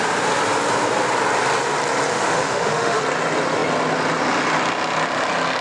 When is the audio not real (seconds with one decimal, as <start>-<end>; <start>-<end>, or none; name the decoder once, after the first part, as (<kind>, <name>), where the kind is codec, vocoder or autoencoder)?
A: 2.1-3.0 (autoencoder, DAC-VAE)